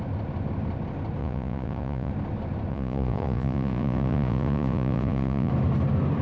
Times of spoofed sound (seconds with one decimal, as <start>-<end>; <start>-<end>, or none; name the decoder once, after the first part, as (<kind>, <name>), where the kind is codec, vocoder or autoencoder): 1.2-2.1 (vocoder, Vocos); 2.7-5.5